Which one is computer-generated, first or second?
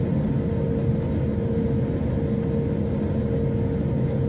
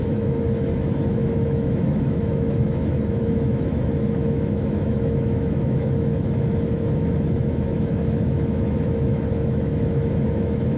second